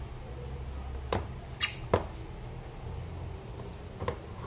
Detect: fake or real real